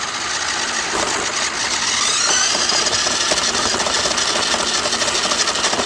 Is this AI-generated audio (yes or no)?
no